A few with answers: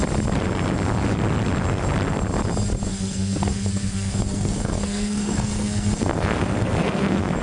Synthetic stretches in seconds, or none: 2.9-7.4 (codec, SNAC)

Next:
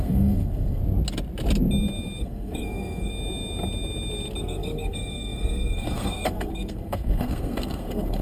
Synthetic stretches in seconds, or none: 0.0-0.8 (codec, SNAC); 2.2-3.1; 4.4-8.2

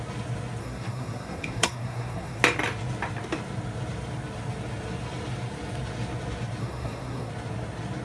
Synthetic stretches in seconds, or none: 0.6-2.4 (codec, SNAC); 6.6-7.3

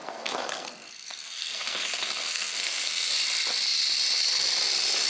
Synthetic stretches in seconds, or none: 0.0-3.1 (codec, SNAC)

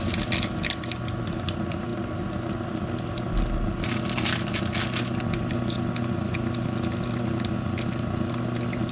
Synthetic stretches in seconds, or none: none

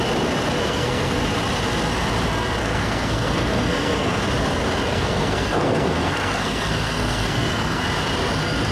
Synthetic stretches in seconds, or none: 0.6-1.2 (codec, SNAC); 2.6-4.2; 4.9-7.8

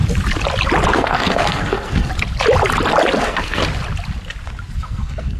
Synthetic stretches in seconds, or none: 0.9-2.1 (codec, SNAC); 3.2-3.6; 4.8-5.4